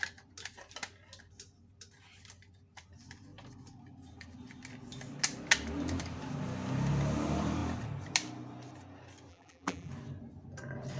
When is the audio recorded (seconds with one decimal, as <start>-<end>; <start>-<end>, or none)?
0.0-9.3; 9.9-11.0